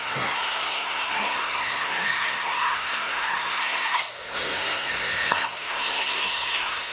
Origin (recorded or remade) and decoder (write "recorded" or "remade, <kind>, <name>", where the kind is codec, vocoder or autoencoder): remade, codec, SNAC